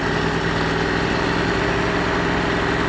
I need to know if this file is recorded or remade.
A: recorded